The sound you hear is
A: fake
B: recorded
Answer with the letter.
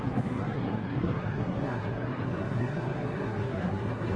A